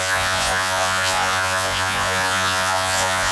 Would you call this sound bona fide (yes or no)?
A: no